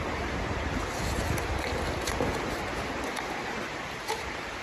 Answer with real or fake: real